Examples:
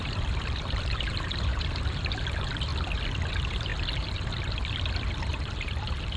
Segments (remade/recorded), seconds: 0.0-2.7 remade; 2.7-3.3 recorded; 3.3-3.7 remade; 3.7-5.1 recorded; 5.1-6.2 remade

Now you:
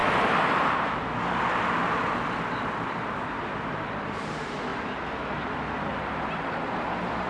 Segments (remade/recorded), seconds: 0.0-4.7 recorded; 4.7-5.5 remade; 5.5-5.9 recorded; 5.9-6.6 remade; 6.6-7.3 recorded